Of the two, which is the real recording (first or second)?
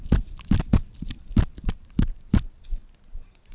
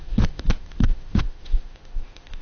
first